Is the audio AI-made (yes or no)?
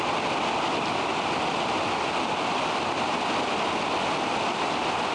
no